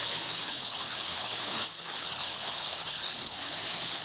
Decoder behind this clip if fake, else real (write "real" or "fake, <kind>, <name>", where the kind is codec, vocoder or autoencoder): fake, codec, HILCodec